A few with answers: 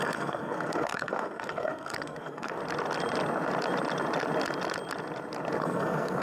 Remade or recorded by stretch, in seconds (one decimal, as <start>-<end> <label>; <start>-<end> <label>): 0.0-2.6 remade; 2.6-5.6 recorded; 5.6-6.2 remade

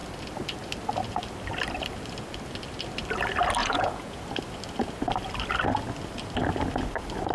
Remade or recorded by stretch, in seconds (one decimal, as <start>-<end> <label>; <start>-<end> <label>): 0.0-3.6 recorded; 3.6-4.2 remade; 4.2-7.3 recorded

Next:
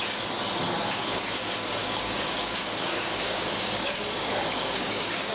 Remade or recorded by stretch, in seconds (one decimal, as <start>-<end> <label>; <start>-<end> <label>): 0.0-1.8 recorded; 1.8-5.3 remade

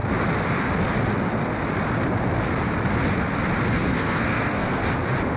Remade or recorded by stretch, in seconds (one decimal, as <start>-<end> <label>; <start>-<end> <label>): 0.0-3.9 recorded; 3.9-4.8 remade; 4.8-5.4 recorded

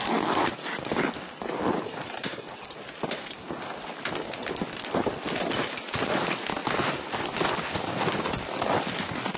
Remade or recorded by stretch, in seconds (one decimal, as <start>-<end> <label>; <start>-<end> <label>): 0.0-9.4 recorded